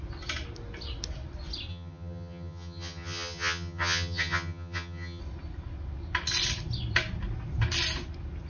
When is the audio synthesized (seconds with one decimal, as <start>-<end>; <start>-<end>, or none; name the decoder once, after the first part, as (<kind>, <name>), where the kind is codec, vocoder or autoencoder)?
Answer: 1.7-5.2 (vocoder, HiFi-GAN)